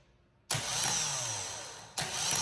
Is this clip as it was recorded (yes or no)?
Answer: yes